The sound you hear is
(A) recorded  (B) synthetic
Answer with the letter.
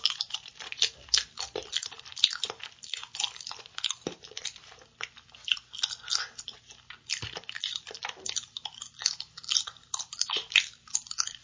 A